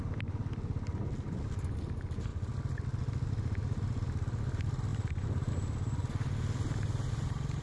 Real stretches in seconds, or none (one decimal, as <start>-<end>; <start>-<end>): 0.0-7.6